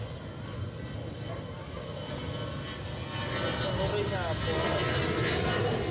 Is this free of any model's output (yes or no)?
yes